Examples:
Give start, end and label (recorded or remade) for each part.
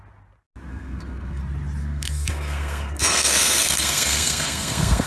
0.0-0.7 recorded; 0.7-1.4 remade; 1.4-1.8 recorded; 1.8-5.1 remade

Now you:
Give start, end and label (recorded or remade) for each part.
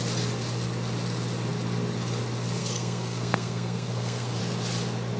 0.0-2.6 recorded; 2.6-4.4 remade; 4.4-5.2 recorded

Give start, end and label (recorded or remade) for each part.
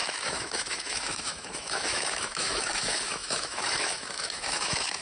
0.0-5.0 remade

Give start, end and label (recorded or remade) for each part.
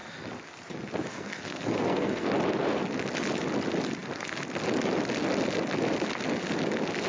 0.0-1.1 recorded; 1.1-2.3 remade; 2.3-7.1 recorded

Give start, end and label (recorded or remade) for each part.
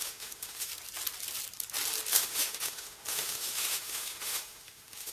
0.0-0.7 remade; 0.7-2.1 recorded; 2.1-5.1 remade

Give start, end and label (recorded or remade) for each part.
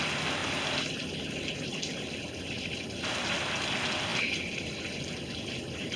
0.0-0.4 recorded; 0.4-1.2 remade; 1.2-1.7 recorded; 1.7-2.8 remade; 2.8-4.1 recorded; 4.1-4.7 remade; 4.7-6.0 recorded